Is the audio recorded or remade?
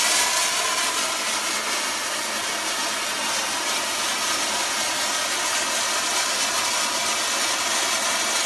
recorded